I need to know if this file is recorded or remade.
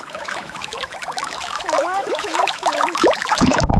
remade